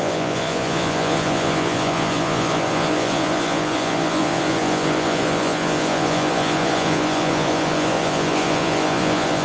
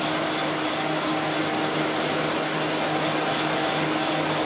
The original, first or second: second